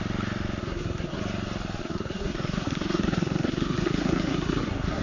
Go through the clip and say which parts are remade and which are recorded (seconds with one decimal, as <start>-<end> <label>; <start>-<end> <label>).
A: 0.0-0.6 recorded; 0.6-1.2 remade; 1.2-1.8 recorded; 1.8-5.0 remade